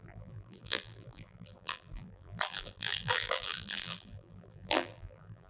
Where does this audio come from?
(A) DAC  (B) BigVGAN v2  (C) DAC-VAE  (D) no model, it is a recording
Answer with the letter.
B